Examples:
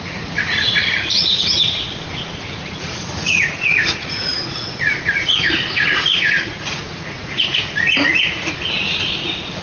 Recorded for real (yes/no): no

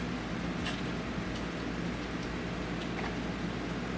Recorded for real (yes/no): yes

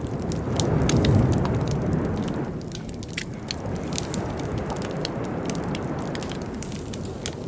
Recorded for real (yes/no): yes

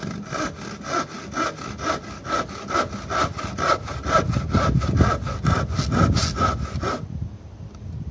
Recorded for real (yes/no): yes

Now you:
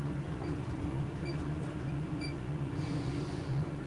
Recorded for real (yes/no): no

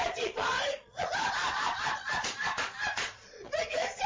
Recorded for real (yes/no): no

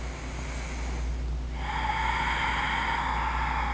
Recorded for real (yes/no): yes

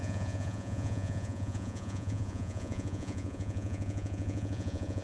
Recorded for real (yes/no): no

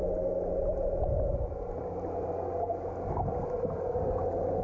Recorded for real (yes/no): yes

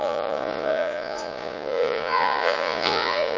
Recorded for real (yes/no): no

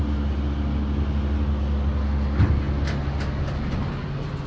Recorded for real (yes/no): yes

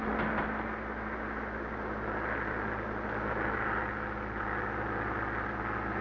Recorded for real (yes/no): yes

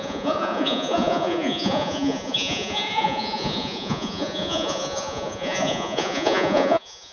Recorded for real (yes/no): no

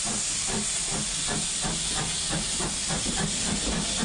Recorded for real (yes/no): yes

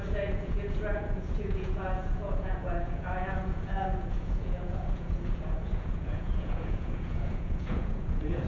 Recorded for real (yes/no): no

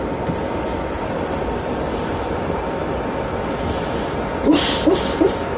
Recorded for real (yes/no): yes